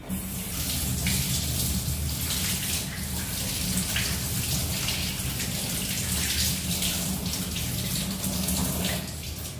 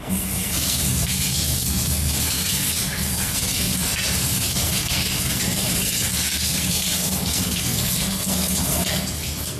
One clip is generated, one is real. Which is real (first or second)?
first